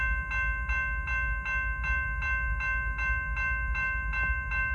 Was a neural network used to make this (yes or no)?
no